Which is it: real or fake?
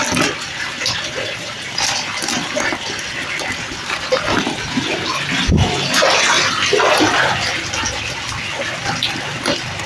real